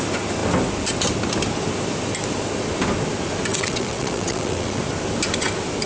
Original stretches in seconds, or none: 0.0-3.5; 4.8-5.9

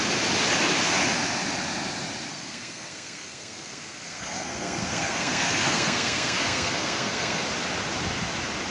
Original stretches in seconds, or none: 0.0-2.3; 7.4-8.7

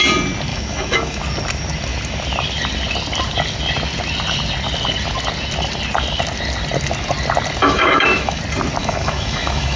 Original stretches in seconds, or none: 0.0-0.5; 1.2-7.6; 8.4-8.8

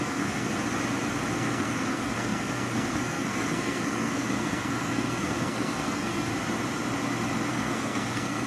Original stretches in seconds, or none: 0.5-1.3; 6.3-7.5

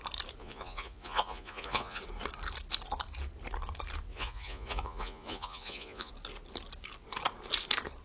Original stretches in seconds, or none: 0.0-0.4; 2.0-4.1; 6.1-8.0

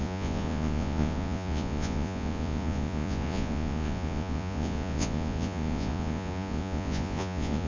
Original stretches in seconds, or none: none

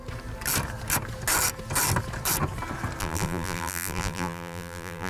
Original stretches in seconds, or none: 0.0-3.0

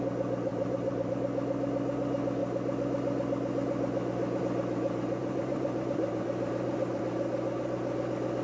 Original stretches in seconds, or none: 0.0-0.5; 1.1-5.2; 7.0-8.4